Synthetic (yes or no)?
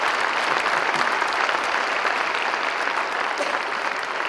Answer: yes